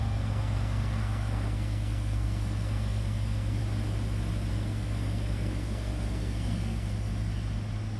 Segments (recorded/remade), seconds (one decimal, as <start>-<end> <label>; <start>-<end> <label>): 0.0-3.6 remade; 3.6-4.5 recorded; 4.5-7.1 remade; 7.1-8.0 recorded

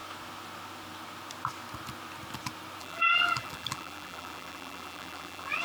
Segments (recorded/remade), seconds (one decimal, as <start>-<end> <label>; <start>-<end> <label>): 0.0-2.8 recorded; 2.8-5.6 remade

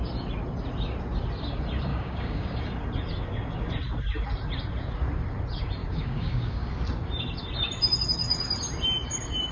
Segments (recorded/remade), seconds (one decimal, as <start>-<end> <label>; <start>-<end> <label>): 0.0-1.9 recorded; 1.9-2.6 remade; 2.6-5.8 recorded; 5.8-6.7 remade; 6.7-9.5 recorded